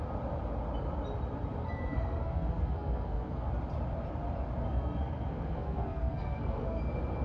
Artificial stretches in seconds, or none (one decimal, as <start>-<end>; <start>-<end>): 1.6-3.5; 4.7-6.8